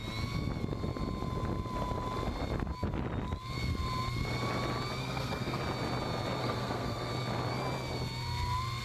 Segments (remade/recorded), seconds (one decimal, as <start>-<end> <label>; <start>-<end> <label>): 0.0-5.0 recorded; 5.0-5.6 remade; 5.6-6.4 recorded; 6.4-7.1 remade; 7.1-8.8 recorded